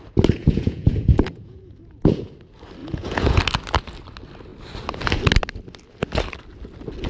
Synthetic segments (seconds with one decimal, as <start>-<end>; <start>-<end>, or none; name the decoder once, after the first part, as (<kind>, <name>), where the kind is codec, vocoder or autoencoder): 0.4-2.3 (vocoder, Vocos); 2.8-3.4